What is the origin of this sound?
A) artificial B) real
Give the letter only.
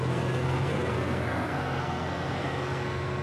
A